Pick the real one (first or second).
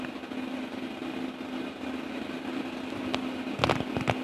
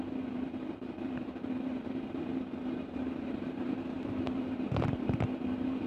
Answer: first